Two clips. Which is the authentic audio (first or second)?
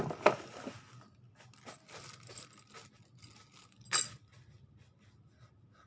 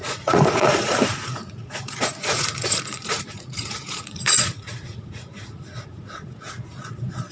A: first